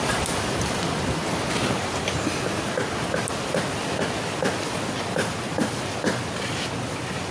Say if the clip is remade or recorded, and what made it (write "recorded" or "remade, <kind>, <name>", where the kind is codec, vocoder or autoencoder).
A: recorded